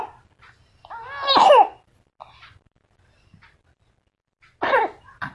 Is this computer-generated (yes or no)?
no